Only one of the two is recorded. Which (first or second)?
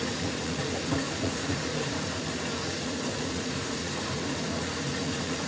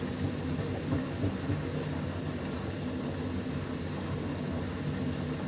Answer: second